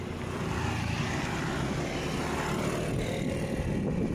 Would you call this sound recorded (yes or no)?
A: yes